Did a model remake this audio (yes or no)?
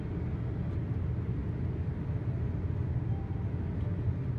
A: no